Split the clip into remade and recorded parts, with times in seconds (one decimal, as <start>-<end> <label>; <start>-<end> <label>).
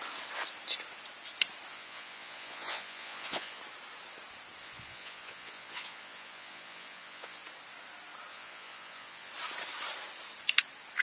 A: 0.0-1.7 recorded; 1.7-3.6 remade; 3.6-4.6 recorded; 4.6-7.4 remade; 7.4-8.3 recorded; 8.3-9.3 remade; 9.3-11.0 recorded